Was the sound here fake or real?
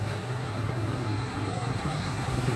fake